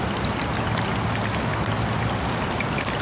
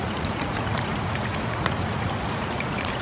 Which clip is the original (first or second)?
first